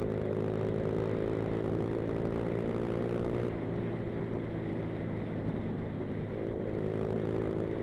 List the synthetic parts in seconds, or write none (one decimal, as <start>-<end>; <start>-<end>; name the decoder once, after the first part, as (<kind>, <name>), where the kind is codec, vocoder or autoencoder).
none